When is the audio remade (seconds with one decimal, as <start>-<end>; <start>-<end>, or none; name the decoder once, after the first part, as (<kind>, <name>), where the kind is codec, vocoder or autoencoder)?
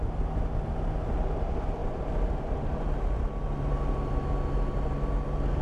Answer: 1.8-2.8 (vocoder, BigVGAN v2)